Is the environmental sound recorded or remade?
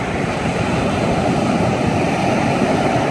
recorded